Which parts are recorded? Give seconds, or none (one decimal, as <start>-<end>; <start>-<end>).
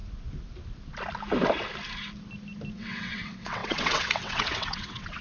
0.0-2.7